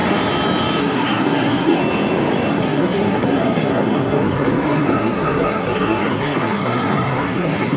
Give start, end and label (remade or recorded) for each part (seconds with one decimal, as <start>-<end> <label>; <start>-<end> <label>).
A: 0.0-0.8 recorded; 0.8-1.8 remade; 1.8-2.5 recorded; 2.5-7.8 remade